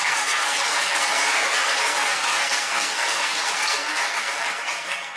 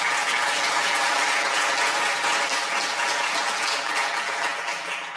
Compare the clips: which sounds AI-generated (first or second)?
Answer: first